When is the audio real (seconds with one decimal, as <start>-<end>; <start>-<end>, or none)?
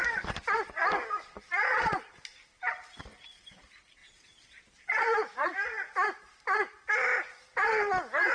0.0-1.5; 2.1-4.0; 5.0-8.3